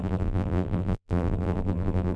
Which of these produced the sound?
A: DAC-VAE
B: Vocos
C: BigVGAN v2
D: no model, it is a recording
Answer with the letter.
C